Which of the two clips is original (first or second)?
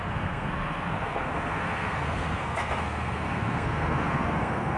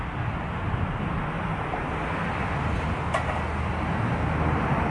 second